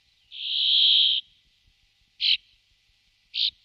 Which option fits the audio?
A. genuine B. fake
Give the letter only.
B